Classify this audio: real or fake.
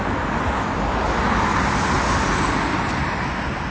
real